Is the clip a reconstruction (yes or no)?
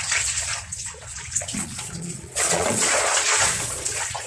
yes